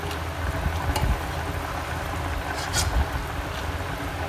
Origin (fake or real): real